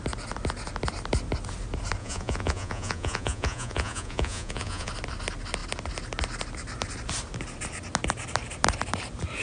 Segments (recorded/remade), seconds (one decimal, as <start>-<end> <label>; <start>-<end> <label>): 0.0-2.0 recorded; 2.0-4.9 remade; 4.9-9.4 recorded